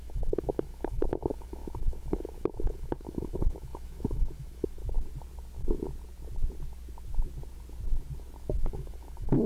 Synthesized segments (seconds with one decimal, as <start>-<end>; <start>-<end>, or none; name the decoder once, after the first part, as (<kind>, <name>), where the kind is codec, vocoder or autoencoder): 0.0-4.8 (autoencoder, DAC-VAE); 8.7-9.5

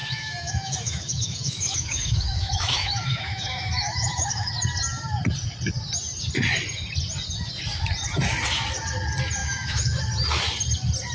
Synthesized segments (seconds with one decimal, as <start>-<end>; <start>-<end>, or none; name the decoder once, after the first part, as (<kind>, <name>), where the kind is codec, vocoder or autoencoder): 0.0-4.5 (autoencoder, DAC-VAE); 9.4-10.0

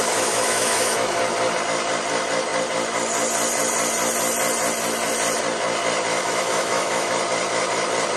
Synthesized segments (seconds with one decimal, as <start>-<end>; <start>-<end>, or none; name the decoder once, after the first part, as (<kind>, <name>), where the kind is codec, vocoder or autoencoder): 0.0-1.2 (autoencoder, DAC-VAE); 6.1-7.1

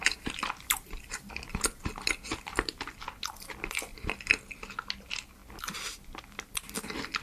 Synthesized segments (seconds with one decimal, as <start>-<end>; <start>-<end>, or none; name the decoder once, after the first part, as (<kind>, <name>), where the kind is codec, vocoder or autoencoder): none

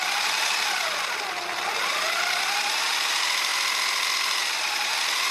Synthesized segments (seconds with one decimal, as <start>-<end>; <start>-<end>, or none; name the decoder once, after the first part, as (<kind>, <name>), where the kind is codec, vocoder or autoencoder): none

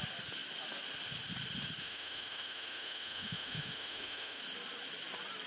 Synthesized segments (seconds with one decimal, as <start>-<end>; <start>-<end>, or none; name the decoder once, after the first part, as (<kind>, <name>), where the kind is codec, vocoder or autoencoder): 1.8-4.4 (autoencoder, DAC-VAE)

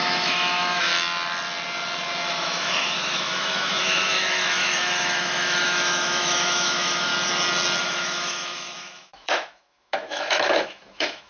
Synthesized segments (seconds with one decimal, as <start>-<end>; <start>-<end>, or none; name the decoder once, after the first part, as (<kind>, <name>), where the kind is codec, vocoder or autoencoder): 0.0-0.9 (autoencoder, DAC-VAE); 2.3-7.1; 7.8-11.3